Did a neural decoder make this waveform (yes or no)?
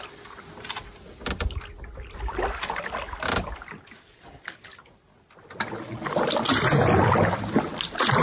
no